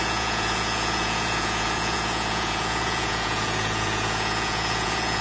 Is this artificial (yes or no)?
yes